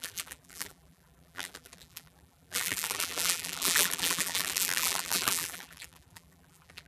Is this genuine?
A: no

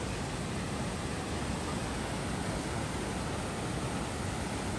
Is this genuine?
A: yes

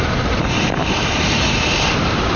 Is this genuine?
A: no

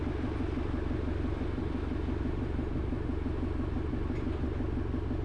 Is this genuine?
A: yes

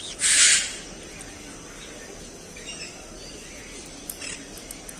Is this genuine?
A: yes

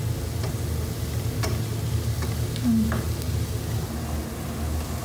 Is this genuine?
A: yes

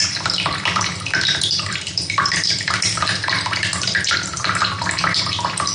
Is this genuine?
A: no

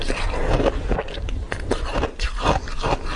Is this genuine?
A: yes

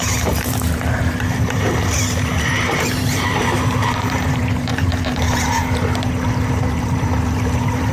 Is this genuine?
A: no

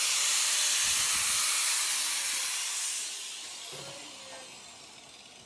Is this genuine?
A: yes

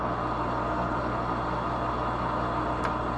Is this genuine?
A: yes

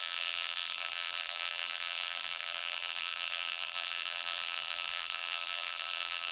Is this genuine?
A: no